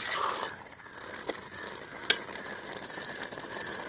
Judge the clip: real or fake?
real